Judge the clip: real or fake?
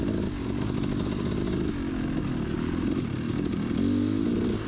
real